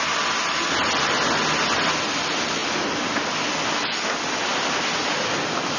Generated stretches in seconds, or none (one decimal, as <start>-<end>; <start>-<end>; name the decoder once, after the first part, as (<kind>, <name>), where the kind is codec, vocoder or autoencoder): none